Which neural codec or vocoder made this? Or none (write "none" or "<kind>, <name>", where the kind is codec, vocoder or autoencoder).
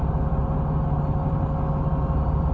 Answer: none